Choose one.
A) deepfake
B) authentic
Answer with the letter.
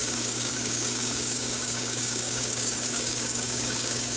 A